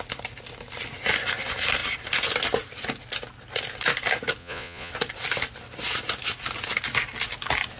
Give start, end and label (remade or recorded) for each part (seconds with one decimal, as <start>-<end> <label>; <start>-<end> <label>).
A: 0.0-4.4 recorded; 4.4-4.9 remade; 4.9-7.8 recorded